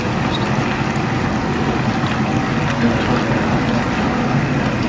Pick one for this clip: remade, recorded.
recorded